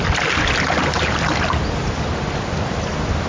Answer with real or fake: real